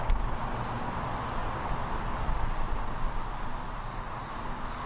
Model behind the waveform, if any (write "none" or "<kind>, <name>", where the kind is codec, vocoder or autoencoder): none